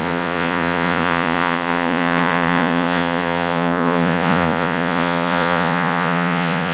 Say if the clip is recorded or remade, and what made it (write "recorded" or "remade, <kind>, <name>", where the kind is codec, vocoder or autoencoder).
remade, vocoder, Vocos